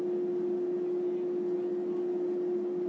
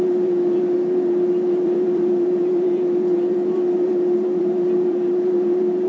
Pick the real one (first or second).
first